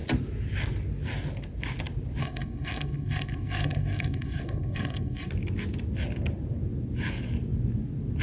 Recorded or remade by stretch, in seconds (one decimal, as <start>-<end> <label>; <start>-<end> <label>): 0.0-2.2 recorded; 2.2-5.3 remade; 5.3-8.2 recorded

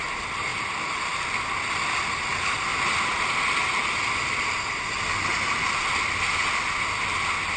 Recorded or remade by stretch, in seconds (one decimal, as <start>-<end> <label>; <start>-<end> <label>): 0.0-7.6 recorded

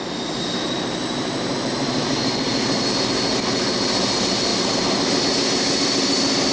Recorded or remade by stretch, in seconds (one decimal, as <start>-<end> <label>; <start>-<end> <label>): 0.0-6.5 recorded

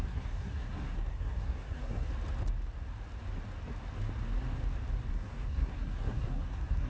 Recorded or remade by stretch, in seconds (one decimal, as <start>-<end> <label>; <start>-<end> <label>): 0.0-2.1 remade; 2.1-5.1 recorded; 5.1-6.9 remade

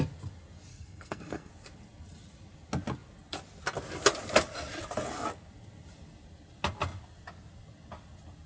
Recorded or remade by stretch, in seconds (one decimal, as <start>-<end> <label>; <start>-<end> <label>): 0.0-0.7 recorded; 0.7-1.5 remade; 1.5-8.5 recorded

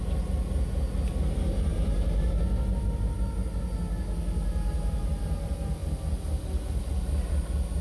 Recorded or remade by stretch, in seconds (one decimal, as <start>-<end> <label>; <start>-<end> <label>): 0.0-7.8 recorded

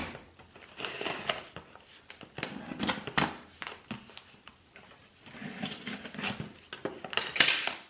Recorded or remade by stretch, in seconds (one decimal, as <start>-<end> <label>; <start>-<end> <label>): 0.0-7.9 recorded